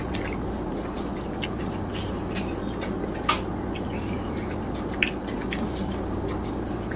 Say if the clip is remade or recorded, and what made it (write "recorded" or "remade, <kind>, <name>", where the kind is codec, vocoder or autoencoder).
recorded